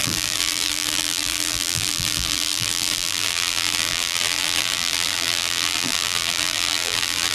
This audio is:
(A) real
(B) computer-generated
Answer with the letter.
B